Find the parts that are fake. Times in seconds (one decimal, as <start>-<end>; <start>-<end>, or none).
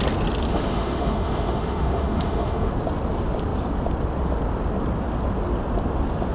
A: 0.5-2.7